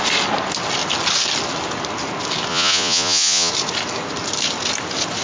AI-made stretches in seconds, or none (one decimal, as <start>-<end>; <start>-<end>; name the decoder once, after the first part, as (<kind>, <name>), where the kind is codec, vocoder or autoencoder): 2.5-3.5 (vocoder, Vocos)